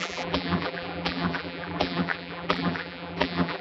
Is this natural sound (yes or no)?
no